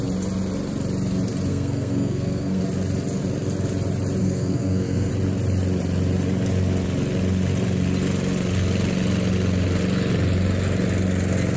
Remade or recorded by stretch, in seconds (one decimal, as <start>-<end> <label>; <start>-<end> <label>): 0.0-1.5 recorded; 1.5-2.6 remade; 2.6-4.2 recorded; 4.2-5.1 remade; 5.1-11.6 recorded